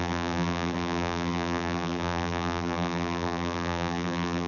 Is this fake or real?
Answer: fake